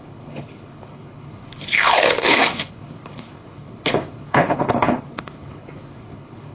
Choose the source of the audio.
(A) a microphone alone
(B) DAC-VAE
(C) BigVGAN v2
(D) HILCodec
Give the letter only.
D